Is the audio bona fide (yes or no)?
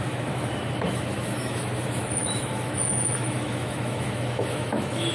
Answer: no